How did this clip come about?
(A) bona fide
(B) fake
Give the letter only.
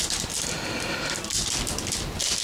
A